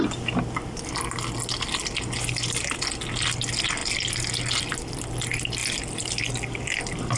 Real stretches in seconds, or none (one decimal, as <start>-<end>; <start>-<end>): 0.0-7.2